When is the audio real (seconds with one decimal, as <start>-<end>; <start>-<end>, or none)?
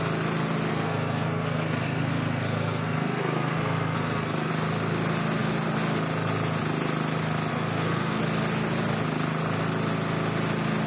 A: 0.0-0.7; 4.5-7.5; 8.2-10.9